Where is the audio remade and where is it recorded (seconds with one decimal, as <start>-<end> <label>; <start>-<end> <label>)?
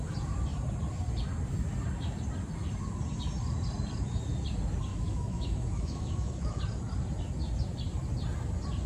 0.0-4.9 recorded; 4.9-6.6 remade; 6.6-8.9 recorded